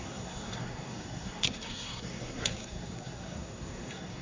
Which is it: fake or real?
fake